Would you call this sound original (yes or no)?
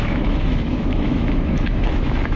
no